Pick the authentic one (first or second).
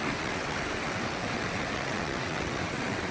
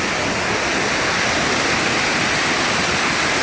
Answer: second